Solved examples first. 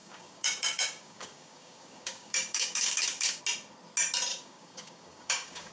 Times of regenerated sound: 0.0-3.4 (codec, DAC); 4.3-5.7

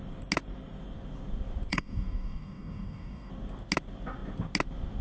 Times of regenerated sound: 1.7-3.3 (codec, DAC)

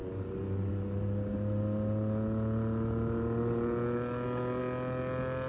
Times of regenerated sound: none